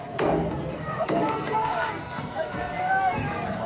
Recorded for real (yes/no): no